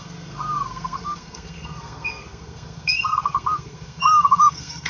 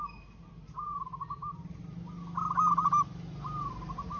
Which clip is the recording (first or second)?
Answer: second